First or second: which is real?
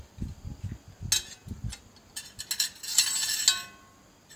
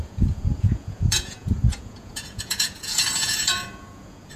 first